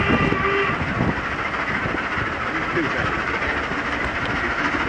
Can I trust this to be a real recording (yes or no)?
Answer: yes